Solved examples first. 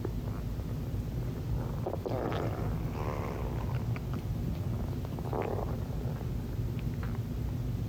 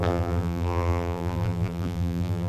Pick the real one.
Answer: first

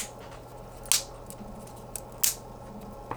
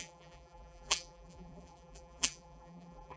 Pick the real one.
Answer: first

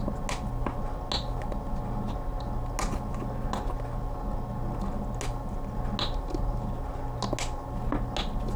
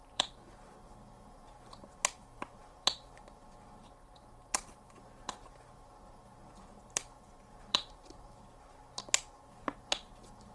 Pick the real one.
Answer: first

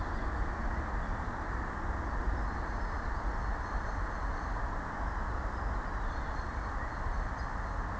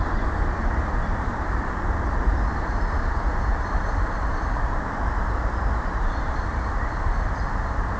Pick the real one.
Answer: first